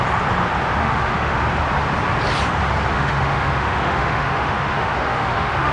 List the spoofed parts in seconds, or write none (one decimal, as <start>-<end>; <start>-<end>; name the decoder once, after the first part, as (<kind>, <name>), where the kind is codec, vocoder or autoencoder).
0.8-1.4 (autoencoder, DAC-VAE); 2.9-5.7